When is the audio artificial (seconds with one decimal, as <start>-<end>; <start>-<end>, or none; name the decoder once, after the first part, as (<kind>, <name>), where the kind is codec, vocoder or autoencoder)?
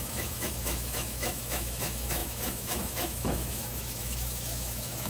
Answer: 0.0-5.1 (autoencoder, DAC-VAE)